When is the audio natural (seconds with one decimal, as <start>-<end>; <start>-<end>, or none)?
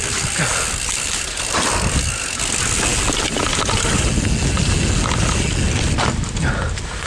0.0-7.1